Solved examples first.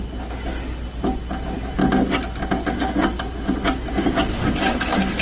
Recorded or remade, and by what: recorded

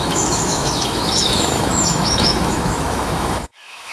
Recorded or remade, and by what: remade, autoencoder, DAC-VAE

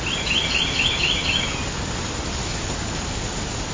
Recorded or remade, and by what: recorded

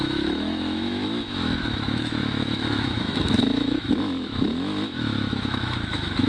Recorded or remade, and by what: remade, autoencoder, DAC-VAE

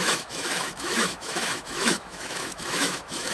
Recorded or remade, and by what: remade, autoencoder, DAC-VAE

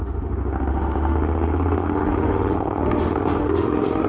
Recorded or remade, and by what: remade, autoencoder, DAC-VAE